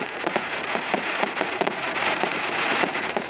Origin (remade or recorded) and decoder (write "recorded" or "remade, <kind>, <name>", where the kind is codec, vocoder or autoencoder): remade, vocoder, Vocos